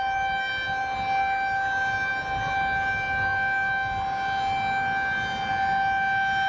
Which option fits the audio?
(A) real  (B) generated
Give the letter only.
A